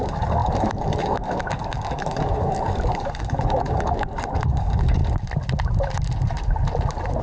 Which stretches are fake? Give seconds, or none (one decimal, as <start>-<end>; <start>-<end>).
0.0-5.0